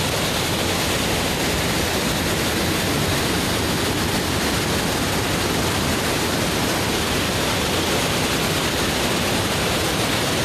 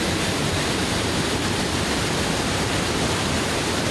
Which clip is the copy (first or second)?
second